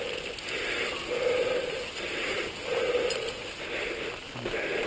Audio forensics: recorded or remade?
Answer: recorded